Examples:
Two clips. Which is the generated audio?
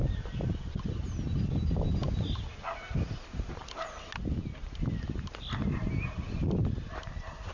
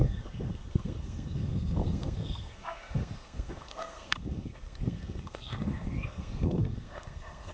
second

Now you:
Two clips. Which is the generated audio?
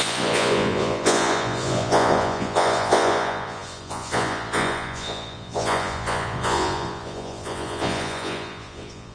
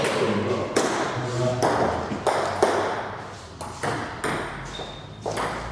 first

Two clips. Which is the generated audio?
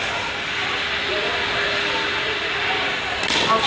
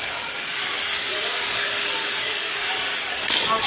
second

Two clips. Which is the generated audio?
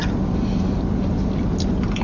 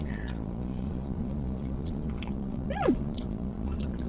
second